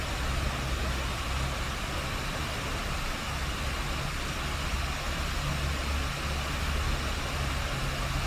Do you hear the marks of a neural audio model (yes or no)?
no